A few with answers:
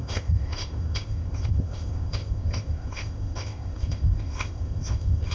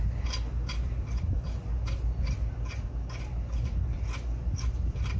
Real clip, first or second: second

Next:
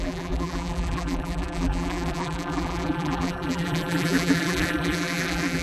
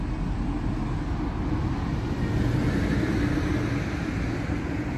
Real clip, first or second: second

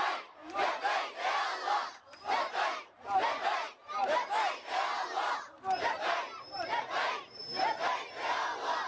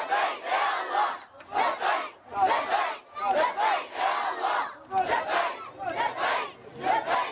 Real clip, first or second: second